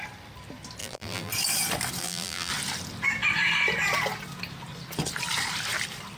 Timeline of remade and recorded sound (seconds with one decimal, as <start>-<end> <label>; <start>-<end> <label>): 0.0-0.8 recorded; 0.8-1.3 remade; 1.3-2.0 recorded; 2.0-2.5 remade; 2.5-6.2 recorded